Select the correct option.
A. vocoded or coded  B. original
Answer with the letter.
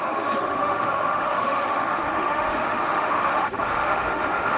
A